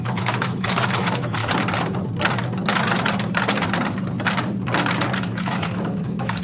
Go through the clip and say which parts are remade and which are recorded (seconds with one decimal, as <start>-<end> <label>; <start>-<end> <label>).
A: 0.0-1.4 remade; 1.4-5.2 recorded; 5.2-6.4 remade